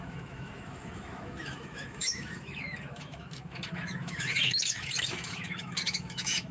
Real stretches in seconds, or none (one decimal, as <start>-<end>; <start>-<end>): none